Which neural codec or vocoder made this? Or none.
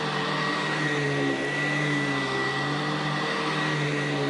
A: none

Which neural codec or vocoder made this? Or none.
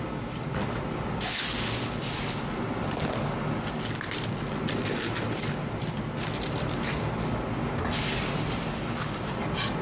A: none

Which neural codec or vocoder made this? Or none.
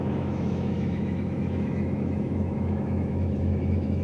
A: autoencoder, DAC-VAE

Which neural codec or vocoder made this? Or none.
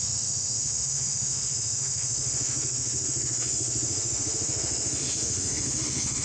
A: autoencoder, DAC-VAE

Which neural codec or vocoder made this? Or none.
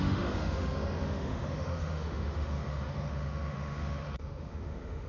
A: autoencoder, DAC-VAE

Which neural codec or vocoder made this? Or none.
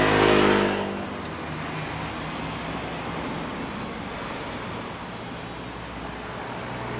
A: none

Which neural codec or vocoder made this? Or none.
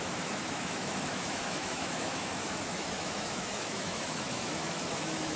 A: autoencoder, DAC-VAE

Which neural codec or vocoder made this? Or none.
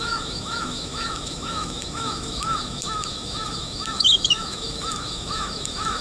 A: autoencoder, DAC-VAE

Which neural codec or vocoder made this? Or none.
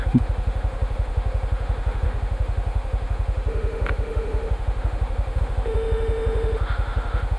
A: autoencoder, DAC-VAE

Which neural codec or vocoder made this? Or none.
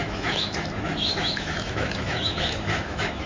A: autoencoder, DAC-VAE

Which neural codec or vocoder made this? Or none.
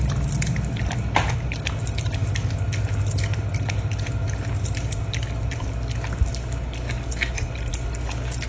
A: none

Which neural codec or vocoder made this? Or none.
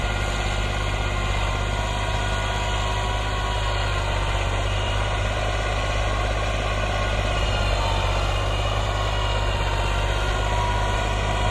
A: none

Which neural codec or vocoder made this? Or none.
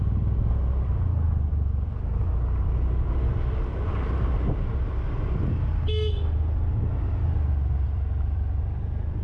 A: none